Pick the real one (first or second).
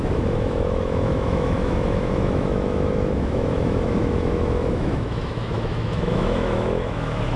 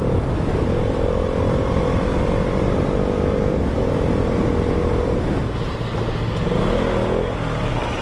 second